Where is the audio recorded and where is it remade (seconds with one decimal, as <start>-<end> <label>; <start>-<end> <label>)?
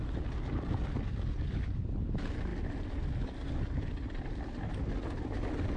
0.0-5.8 recorded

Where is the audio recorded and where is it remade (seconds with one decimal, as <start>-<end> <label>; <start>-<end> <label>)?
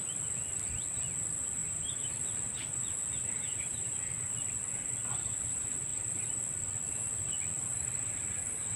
0.0-1.6 recorded; 1.6-2.1 remade; 2.1-3.4 recorded; 3.4-3.9 remade; 3.9-8.8 recorded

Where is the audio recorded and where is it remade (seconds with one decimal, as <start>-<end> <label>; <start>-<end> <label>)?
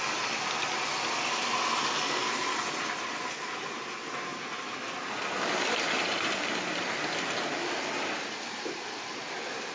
0.0-9.7 recorded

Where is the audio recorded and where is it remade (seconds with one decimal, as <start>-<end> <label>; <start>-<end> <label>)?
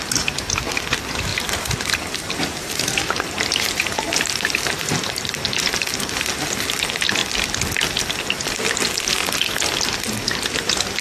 0.0-1.3 recorded; 1.3-5.9 remade; 5.9-11.0 recorded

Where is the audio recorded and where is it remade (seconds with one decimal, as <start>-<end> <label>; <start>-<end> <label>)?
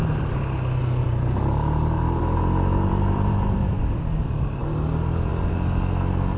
0.0-1.0 recorded; 1.0-3.8 remade; 3.8-6.4 recorded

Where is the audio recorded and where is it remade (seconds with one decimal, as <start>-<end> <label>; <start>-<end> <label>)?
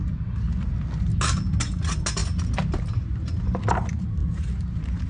0.0-4.2 recorded; 4.2-5.1 remade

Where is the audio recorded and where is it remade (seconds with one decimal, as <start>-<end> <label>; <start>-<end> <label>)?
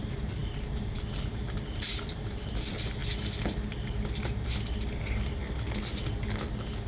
0.0-3.0 remade; 3.0-4.2 recorded; 4.2-5.4 remade; 5.4-6.3 recorded; 6.3-6.9 remade